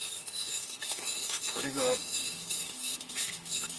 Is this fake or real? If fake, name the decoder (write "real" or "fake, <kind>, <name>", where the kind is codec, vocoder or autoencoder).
fake, autoencoder, DAC-VAE